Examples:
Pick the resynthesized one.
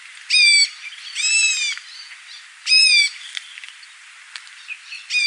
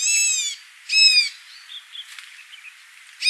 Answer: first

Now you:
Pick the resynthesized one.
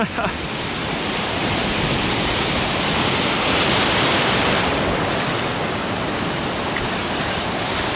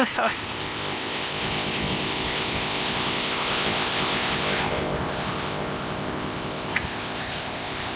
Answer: second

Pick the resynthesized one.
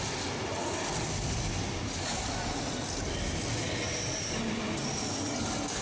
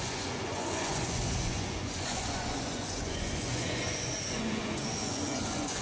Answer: second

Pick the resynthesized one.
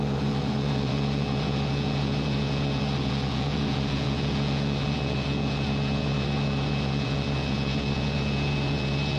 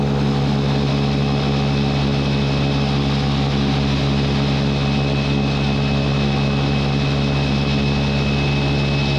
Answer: first